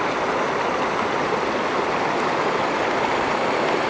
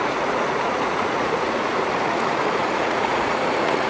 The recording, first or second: first